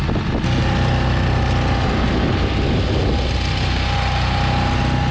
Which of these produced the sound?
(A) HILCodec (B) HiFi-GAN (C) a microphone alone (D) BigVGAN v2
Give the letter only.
C